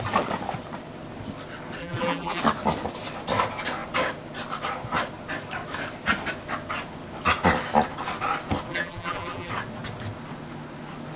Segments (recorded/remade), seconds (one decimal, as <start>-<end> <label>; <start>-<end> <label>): 0.0-1.8 recorded; 1.8-2.4 remade; 2.4-8.7 recorded; 8.7-9.5 remade; 9.5-11.2 recorded